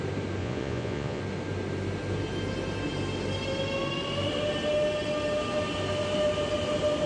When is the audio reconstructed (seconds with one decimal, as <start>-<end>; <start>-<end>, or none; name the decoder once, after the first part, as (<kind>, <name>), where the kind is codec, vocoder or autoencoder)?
0.4-1.2 (vocoder, Vocos)